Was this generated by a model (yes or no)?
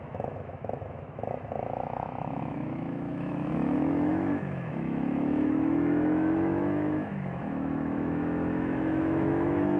yes